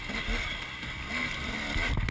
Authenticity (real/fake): real